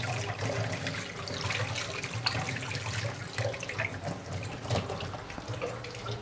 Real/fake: real